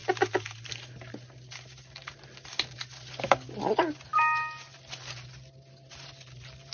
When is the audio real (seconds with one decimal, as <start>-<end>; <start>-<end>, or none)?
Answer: 0.0-6.7

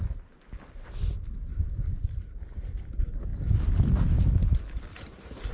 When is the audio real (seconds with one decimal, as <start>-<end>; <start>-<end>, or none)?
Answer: 0.0-5.5

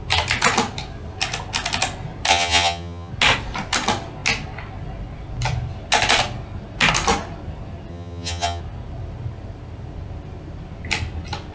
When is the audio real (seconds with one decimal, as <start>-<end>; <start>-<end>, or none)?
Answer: 0.0-2.3; 3.1-7.9; 8.6-11.5

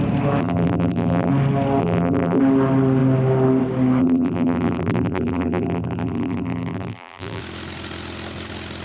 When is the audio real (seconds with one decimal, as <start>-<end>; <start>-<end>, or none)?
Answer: 0.0-0.4; 1.3-1.8; 2.4-4.0; 7.4-8.8

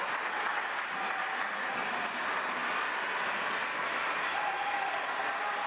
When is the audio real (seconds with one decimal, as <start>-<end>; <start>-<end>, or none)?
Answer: 0.0-5.7

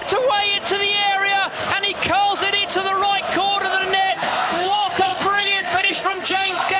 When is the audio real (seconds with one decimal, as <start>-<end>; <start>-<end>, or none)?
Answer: 0.0-4.1

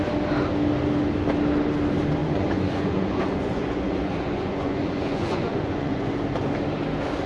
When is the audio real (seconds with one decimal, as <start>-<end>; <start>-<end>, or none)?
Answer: 0.0-2.2; 6.1-7.3

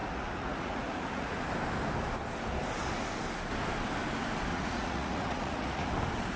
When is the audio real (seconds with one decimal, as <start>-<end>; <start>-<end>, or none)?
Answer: 1.4-4.5; 5.9-6.4